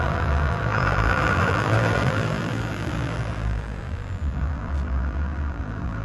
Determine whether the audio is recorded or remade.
remade